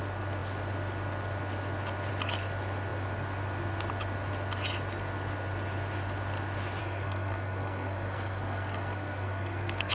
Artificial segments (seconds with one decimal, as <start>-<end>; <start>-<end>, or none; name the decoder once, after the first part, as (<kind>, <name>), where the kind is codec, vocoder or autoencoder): 6.8-9.9 (codec, SNAC)